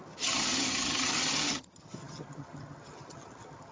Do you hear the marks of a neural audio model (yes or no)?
yes